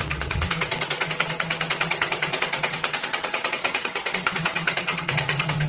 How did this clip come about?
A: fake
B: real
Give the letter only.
A